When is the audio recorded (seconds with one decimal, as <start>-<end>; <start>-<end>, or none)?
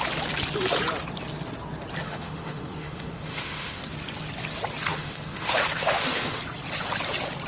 0.0-2.0; 3.8-4.9; 6.4-7.5